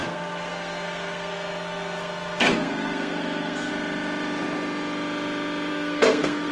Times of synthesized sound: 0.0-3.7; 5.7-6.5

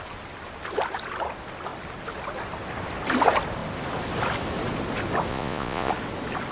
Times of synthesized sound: 5.3-5.9